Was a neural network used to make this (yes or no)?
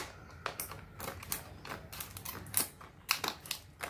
no